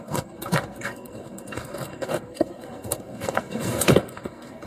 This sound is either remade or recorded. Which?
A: remade